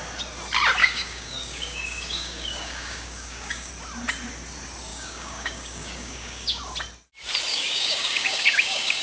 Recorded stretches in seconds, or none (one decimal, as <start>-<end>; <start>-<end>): 0.0-0.8; 3.7-4.9; 6.6-7.5